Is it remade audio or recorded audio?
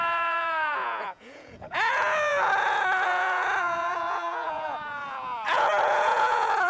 remade